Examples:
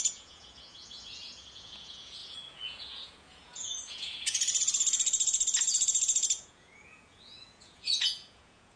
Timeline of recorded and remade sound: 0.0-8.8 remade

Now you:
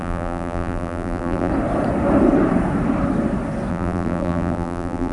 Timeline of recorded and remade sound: 0.0-1.5 remade; 1.5-3.7 recorded; 3.7-5.1 remade

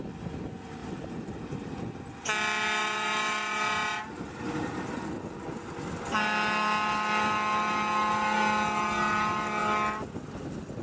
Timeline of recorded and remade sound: 0.0-0.8 recorded; 0.8-1.8 remade; 1.8-2.8 recorded; 2.8-5.1 remade; 5.1-10.8 recorded

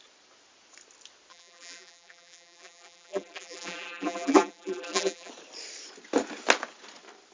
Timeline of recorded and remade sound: 0.0-1.3 recorded; 1.3-5.3 remade; 5.3-7.3 recorded